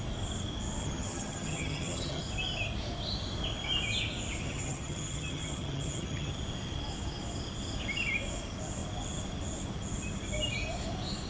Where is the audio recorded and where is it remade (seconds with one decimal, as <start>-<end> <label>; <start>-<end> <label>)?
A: 0.0-0.8 recorded; 0.8-2.2 remade; 2.2-4.4 recorded; 4.4-6.3 remade; 6.3-11.3 recorded